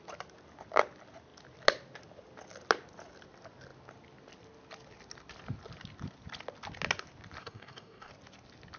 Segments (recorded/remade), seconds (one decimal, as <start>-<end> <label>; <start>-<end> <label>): 0.0-7.4 recorded; 7.4-8.1 remade; 8.1-8.8 recorded